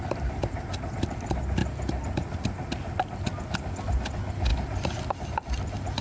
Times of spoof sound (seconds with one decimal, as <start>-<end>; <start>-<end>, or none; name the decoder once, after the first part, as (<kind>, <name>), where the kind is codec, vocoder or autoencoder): none